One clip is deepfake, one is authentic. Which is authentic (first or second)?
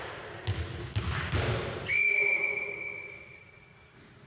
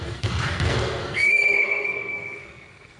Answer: first